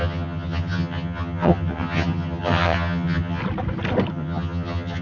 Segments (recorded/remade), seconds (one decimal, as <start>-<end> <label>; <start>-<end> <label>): 0.0-3.4 remade; 3.4-4.1 recorded; 4.1-5.0 remade